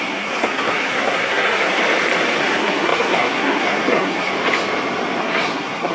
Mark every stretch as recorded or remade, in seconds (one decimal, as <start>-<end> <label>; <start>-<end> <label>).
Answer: 0.0-1.8 remade; 1.8-2.4 recorded; 2.4-4.3 remade; 4.3-5.2 recorded; 5.2-5.9 remade